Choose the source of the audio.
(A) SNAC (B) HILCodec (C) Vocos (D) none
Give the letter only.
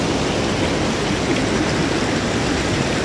D